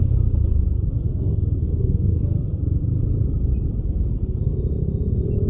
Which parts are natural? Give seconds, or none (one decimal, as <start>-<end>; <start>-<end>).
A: 0.0-0.9; 2.2-5.5